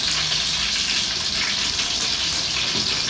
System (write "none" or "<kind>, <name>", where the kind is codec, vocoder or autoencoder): none